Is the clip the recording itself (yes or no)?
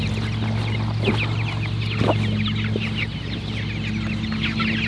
yes